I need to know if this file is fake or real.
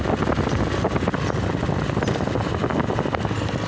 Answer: real